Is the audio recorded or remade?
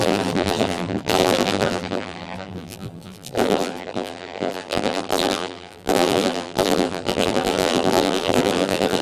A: remade